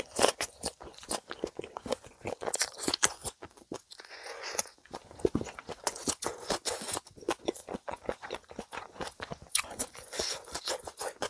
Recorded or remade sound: remade